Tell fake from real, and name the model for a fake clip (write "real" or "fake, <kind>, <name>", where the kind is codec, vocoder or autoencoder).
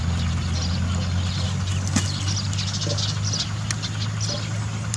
real